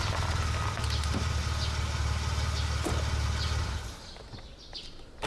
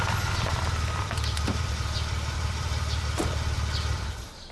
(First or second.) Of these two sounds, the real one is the first